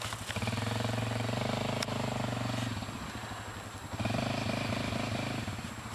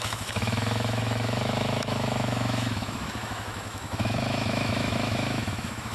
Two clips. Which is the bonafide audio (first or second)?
first